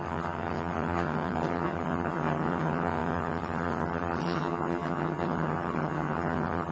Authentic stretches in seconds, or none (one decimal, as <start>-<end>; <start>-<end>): none